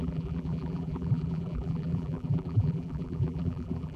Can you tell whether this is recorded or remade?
remade